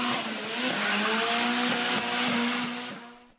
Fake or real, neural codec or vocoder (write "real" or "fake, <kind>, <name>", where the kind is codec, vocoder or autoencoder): real